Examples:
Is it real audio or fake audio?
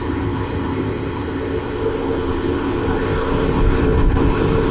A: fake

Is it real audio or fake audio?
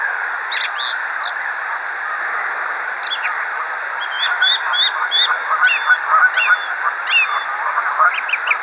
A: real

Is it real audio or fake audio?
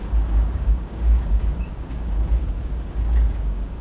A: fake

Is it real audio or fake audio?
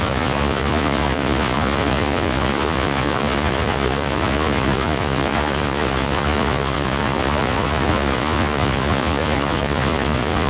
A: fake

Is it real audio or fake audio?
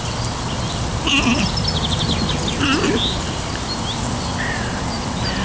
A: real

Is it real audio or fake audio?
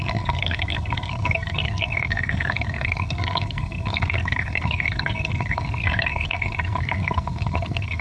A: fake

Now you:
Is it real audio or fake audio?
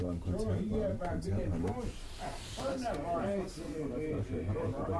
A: fake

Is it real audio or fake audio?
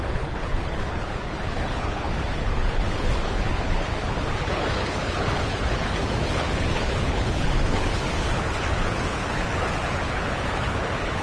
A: fake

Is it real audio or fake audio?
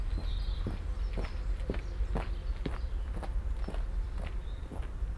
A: real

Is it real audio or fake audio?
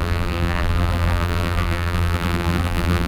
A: fake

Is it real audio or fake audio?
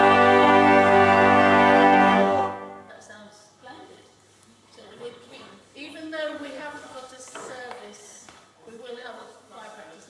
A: fake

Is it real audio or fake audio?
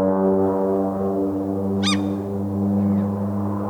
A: real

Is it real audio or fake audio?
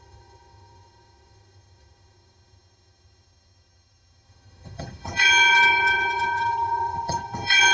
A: fake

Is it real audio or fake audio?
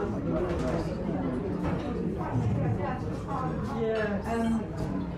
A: real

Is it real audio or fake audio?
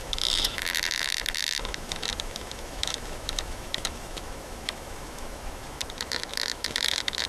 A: fake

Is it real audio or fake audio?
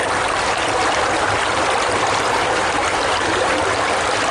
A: real